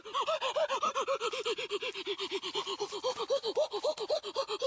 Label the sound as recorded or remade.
recorded